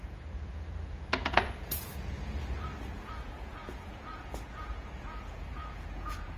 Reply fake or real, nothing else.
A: fake